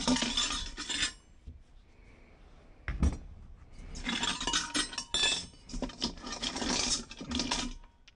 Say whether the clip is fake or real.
real